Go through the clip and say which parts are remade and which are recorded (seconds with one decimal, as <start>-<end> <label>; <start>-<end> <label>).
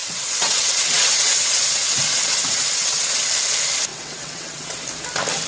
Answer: 0.0-3.3 remade; 3.3-3.9 recorded; 3.9-4.8 remade; 4.8-5.5 recorded